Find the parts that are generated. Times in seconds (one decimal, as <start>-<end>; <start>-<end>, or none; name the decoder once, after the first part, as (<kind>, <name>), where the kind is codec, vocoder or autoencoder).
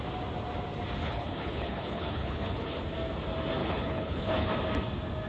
1.0-2.8 (codec, HILCodec); 3.6-4.5